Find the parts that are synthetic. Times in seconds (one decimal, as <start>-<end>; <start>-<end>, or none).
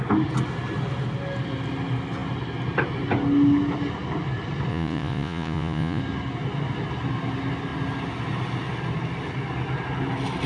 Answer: 4.7-6.0